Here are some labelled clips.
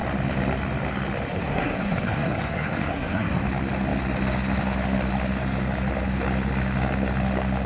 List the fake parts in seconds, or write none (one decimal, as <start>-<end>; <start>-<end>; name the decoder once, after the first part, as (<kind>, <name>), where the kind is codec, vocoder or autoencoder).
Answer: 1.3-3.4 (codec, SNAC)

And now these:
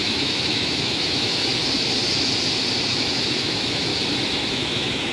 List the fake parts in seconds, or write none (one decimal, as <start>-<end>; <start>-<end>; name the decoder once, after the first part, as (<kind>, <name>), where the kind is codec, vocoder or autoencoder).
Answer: 0.0-1.5 (autoencoder, DAC-VAE); 2.9-3.9; 4.5-5.1

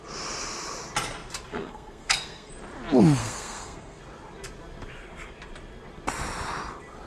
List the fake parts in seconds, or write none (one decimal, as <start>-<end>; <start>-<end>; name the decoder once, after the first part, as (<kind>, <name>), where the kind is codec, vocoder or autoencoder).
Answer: 1.5-2.5 (codec, SNAC); 3.2-4.0

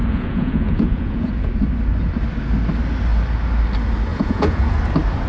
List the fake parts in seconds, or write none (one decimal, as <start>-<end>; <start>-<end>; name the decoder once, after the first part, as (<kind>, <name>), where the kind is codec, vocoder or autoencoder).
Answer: 0.0-1.5 (vocoder, Vocos); 4.1-4.8

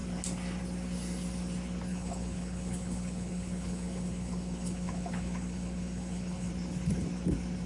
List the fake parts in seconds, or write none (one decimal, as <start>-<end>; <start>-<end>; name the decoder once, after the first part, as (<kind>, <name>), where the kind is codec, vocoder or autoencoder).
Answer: 1.9-6.5 (codec, HILCodec)

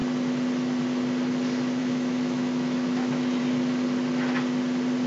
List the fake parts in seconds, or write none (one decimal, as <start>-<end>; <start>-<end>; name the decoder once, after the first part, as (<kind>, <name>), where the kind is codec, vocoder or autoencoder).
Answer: 1.8-3.4 (autoencoder, DAC-VAE)